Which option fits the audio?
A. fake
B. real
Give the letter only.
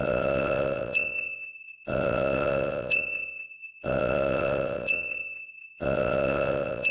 A